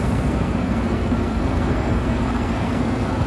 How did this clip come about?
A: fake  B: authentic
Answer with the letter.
A